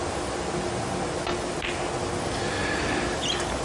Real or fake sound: real